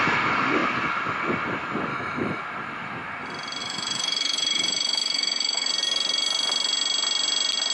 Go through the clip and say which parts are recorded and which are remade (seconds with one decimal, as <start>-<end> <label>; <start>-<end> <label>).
0.0-1.9 recorded; 1.9-2.4 remade; 2.4-3.6 recorded; 3.6-5.7 remade; 5.7-7.7 recorded